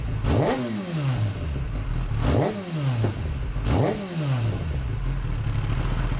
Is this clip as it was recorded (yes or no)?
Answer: yes